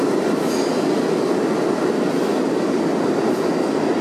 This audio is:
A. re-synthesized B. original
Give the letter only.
B